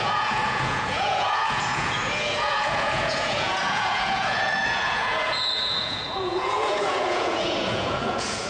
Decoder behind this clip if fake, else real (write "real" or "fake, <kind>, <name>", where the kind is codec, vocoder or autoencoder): fake, vocoder, Vocos